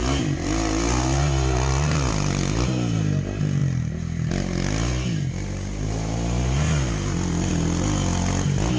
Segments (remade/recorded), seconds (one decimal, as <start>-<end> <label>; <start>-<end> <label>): 0.0-8.8 recorded